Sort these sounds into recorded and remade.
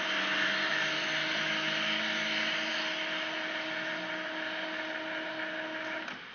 recorded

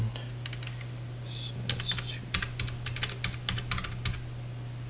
recorded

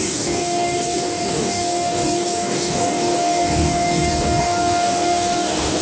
remade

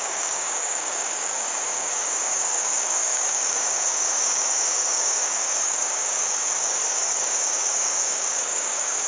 remade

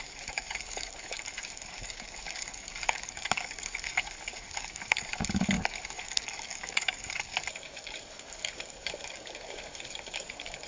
remade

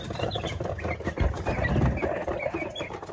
recorded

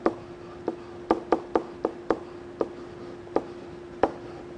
recorded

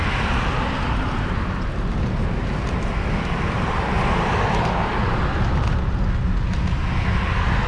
recorded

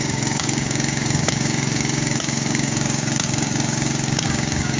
remade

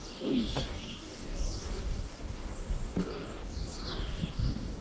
remade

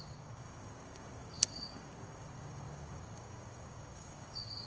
remade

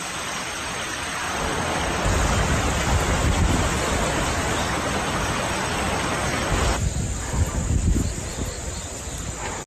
recorded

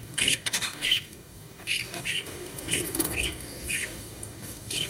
remade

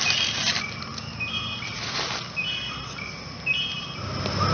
recorded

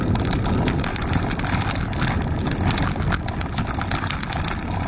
recorded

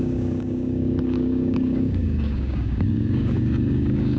remade